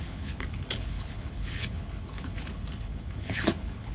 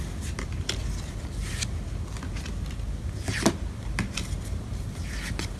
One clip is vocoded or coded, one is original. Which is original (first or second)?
second